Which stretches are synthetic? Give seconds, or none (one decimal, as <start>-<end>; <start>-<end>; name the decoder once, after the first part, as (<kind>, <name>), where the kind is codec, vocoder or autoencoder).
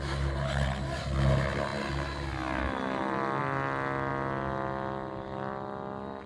none